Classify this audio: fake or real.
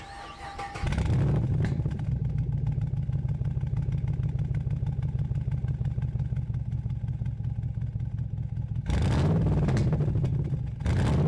real